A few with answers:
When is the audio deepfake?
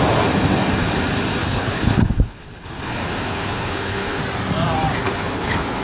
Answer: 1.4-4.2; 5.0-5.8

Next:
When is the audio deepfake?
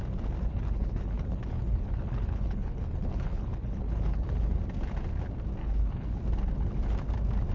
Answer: 0.5-4.6; 5.6-6.2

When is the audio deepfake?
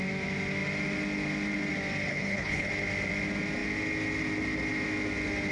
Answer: 2.1-2.7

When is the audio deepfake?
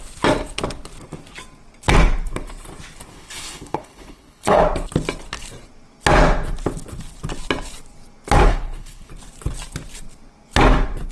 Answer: 3.1-4.6; 8.5-9.1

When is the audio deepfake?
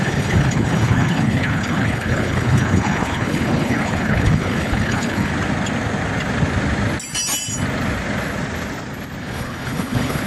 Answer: 0.0-5.3; 9.2-10.3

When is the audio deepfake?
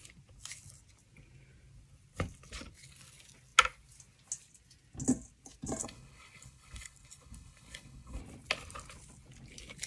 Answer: 5.8-8.2